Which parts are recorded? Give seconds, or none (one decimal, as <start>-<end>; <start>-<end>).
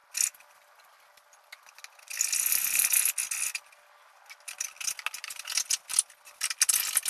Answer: 0.0-7.1